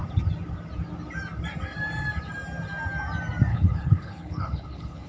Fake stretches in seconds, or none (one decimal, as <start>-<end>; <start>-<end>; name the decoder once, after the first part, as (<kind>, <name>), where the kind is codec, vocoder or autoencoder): 3.5-5.1 (codec, HILCodec)